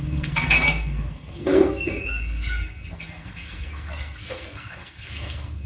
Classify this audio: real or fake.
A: fake